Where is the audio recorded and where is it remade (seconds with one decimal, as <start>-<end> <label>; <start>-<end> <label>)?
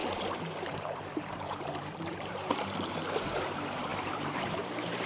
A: 0.0-5.1 remade